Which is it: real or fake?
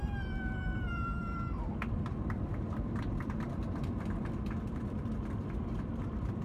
fake